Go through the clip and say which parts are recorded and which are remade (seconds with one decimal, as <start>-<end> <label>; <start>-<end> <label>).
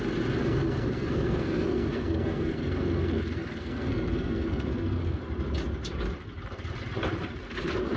0.0-0.4 recorded; 0.4-5.2 remade; 5.2-8.0 recorded